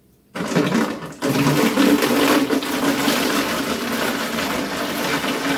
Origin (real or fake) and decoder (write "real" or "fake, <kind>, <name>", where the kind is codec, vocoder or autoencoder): real